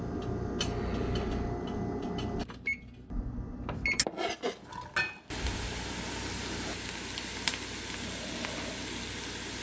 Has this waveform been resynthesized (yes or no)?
no